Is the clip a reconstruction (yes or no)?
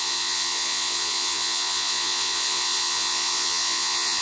yes